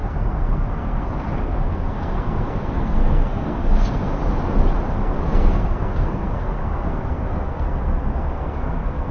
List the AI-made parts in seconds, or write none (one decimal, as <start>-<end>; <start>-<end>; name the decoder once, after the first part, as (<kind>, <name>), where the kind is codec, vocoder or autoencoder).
0.0-4.2 (codec, SNAC); 4.9-9.1